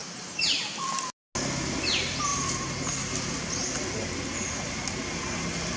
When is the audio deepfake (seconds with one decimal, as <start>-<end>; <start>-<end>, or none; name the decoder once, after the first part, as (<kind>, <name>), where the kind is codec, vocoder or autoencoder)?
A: none

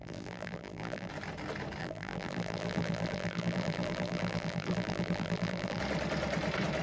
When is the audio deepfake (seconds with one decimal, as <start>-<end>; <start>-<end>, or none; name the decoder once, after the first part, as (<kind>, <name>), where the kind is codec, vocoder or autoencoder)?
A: 0.0-1.1 (vocoder, BigVGAN v2); 1.8-5.8

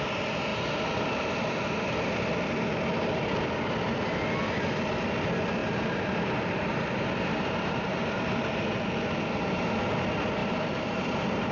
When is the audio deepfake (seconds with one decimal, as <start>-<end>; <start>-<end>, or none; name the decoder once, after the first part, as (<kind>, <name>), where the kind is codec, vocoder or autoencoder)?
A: 5.6-8.6 (vocoder, BigVGAN v2); 10.4-11.5

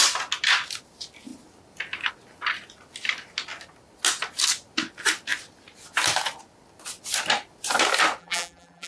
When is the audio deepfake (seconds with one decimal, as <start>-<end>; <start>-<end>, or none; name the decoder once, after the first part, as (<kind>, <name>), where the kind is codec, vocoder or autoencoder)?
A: 8.2-8.9 (vocoder, BigVGAN v2)

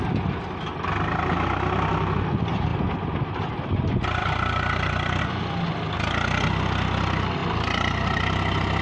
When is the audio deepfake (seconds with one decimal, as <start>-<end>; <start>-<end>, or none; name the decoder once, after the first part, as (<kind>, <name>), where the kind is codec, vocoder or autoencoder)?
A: 4.2-5.2 (vocoder, BigVGAN v2)

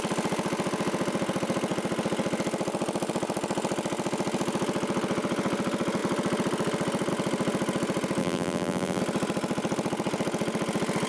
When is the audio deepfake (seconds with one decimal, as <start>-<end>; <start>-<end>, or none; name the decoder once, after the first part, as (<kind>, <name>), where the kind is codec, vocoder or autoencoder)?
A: 8.2-9.0 (vocoder, BigVGAN v2)